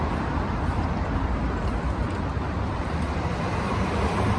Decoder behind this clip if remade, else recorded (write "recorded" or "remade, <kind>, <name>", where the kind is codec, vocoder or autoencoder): remade, vocoder, BigVGAN v2